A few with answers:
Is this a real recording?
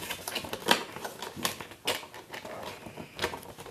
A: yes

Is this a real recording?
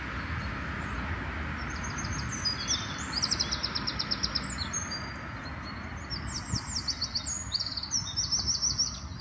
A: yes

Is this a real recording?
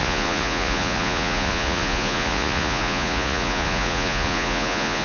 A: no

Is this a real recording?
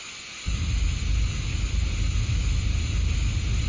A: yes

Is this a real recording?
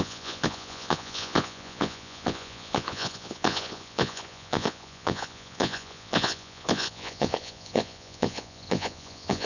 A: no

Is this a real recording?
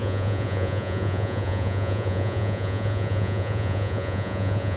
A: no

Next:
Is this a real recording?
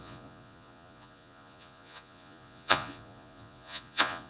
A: no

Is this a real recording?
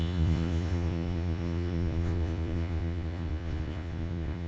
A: no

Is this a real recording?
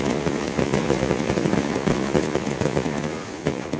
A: no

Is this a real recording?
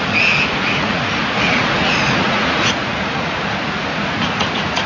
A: no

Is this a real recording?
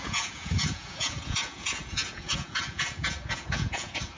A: no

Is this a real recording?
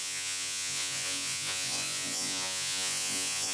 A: no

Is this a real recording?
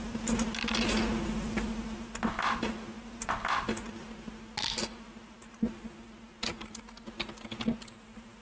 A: yes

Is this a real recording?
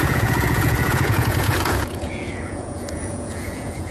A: no